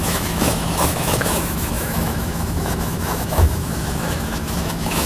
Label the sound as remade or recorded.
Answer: remade